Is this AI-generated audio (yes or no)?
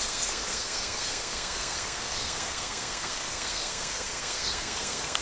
yes